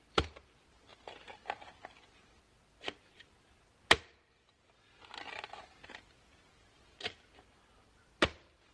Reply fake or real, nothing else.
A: real